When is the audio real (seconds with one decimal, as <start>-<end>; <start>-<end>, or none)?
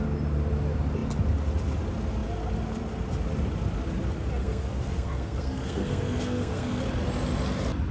0.0-4.4; 6.8-7.9